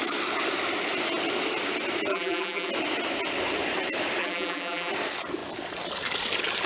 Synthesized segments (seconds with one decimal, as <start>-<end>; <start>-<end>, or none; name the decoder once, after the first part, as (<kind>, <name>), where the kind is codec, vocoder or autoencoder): 2.1-2.7 (vocoder, BigVGAN v2); 4.2-4.9